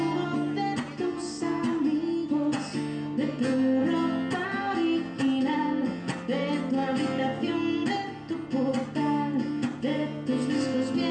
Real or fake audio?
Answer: real